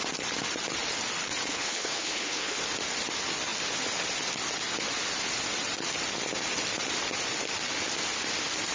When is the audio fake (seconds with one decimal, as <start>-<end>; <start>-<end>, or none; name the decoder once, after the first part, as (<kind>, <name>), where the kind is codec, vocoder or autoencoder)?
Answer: 1.5-2.6 (codec, HILCodec)